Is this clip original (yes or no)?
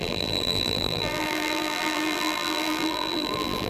no